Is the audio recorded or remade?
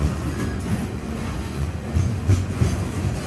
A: remade